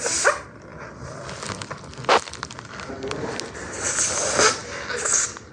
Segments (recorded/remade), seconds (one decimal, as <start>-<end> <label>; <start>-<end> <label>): 0.0-5.5 recorded